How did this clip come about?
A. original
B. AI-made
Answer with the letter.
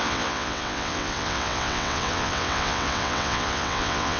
B